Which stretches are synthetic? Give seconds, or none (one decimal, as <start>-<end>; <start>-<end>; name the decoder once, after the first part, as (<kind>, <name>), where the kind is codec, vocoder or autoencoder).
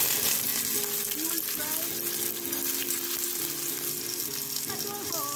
none